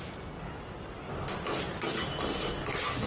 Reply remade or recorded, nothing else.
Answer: recorded